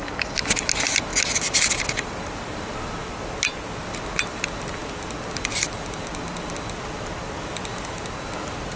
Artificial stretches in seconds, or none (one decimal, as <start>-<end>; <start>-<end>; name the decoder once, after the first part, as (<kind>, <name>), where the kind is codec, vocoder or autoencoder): none